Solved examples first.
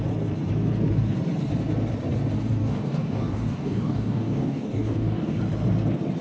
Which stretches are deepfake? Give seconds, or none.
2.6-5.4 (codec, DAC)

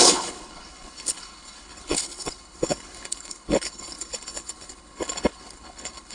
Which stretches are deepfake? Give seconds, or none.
0.0-6.1 (codec, HILCodec)

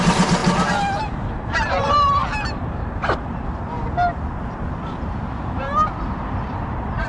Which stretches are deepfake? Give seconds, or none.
0.0-0.4 (vocoder, BigVGAN v2); 1.5-2.2; 4.4-7.1

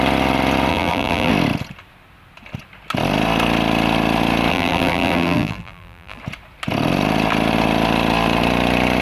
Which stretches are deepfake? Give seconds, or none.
0.7-1.3 (vocoder, BigVGAN v2); 4.5-6.2